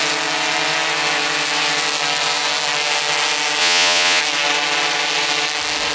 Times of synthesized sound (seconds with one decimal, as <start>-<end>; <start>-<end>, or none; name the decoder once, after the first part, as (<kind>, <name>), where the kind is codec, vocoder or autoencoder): 3.6-4.2 (vocoder, Vocos)